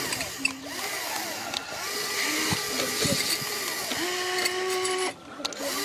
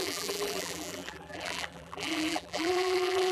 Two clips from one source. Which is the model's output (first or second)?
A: second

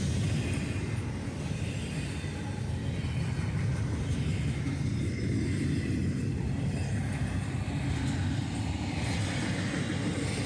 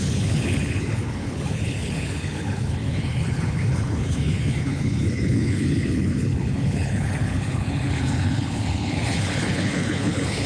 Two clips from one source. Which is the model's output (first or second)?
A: second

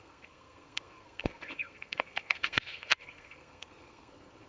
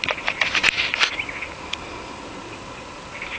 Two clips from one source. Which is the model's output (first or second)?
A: first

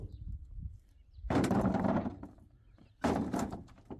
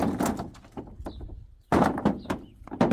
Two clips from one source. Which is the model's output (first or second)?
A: first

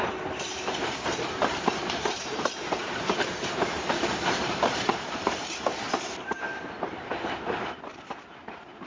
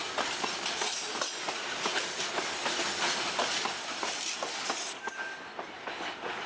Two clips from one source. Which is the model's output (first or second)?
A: first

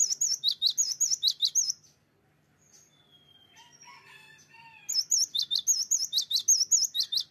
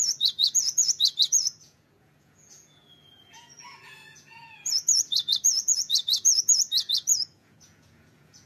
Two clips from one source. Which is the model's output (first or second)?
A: second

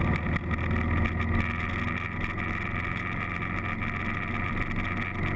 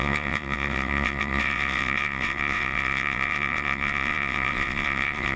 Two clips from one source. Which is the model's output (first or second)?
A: second